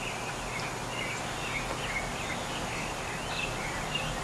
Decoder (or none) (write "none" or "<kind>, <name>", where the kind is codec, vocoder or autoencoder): none